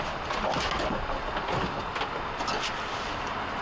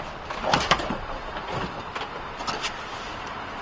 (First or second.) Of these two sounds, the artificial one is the second